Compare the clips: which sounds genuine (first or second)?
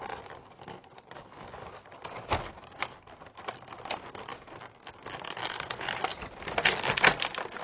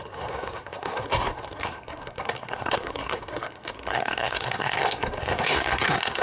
first